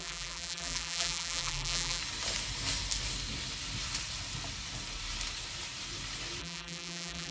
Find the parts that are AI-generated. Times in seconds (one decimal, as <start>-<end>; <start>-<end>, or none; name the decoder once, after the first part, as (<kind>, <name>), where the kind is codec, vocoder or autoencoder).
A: 0.0-2.0 (vocoder, BigVGAN v2); 6.4-7.3